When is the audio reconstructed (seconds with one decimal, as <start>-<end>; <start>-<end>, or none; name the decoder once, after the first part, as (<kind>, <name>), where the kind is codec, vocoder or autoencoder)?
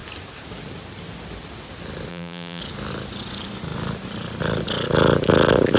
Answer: 2.1-2.6 (vocoder, BigVGAN v2)